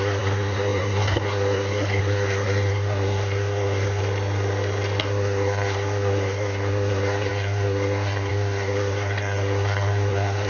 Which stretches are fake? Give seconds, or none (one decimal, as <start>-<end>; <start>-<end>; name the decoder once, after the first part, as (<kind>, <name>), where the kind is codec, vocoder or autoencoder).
0.0-4.0 (codec, SNAC); 5.0-10.5